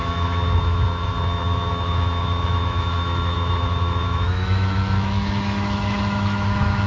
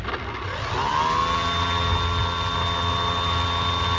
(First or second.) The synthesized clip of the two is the first